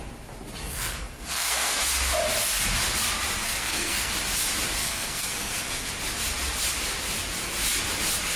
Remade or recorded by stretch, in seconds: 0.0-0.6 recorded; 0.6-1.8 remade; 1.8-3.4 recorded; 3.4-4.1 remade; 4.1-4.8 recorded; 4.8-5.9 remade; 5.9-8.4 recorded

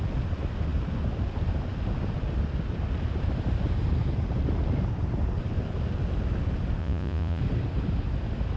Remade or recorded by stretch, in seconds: 0.0-6.8 recorded; 6.8-7.4 remade; 7.4-8.6 recorded